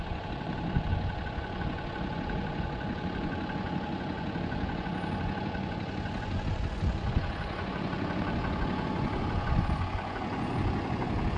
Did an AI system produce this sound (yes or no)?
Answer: yes